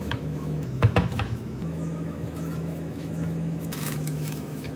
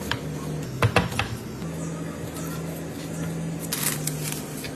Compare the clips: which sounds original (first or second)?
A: second